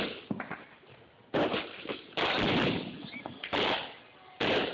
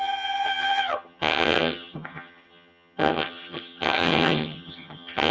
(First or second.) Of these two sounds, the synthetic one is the second